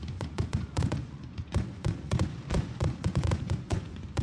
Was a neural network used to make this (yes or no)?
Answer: yes